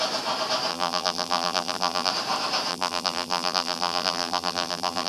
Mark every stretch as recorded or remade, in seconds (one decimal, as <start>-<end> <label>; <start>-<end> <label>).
0.0-0.7 recorded; 0.7-2.1 remade; 2.1-2.7 recorded; 2.7-5.1 remade